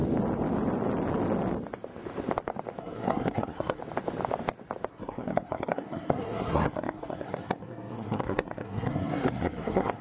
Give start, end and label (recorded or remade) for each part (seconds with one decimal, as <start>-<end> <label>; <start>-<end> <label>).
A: 0.0-2.8 recorded; 2.8-3.8 remade; 3.8-4.9 recorded; 4.9-10.0 remade